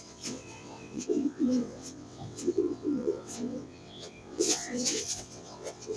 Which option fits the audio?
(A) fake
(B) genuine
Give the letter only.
A